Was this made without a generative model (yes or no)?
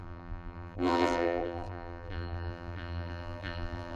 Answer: no